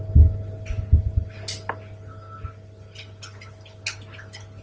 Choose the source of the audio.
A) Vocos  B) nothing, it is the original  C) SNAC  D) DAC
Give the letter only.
B